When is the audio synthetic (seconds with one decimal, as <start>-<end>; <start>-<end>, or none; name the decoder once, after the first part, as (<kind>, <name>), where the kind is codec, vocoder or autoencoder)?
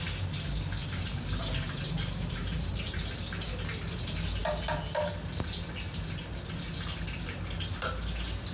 0.8-3.0 (vocoder, BigVGAN v2)